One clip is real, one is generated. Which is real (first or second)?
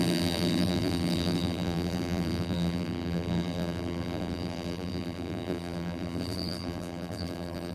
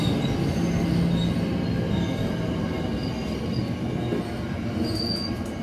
second